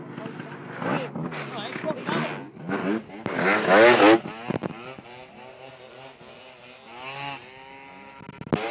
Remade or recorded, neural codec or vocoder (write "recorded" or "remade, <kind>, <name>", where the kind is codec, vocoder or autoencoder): recorded